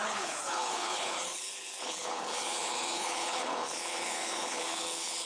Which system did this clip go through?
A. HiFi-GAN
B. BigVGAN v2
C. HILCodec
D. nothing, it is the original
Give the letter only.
C